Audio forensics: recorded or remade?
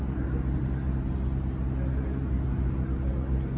recorded